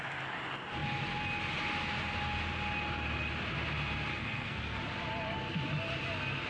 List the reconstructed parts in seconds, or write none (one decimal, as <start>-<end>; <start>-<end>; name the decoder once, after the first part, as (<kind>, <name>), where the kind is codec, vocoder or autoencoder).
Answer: 4.1-4.8 (codec, SNAC)